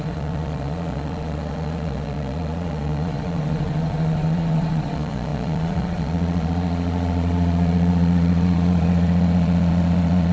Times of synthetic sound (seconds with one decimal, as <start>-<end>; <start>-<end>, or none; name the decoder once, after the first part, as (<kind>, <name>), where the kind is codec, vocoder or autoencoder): 0.0-10.3 (vocoder, Vocos)